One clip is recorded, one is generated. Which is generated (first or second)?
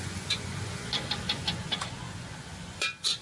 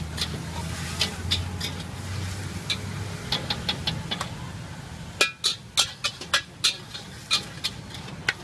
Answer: first